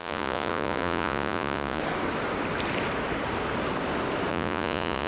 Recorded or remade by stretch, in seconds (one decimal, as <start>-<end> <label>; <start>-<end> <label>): 0.0-1.8 remade; 1.8-4.3 recorded; 4.3-5.1 remade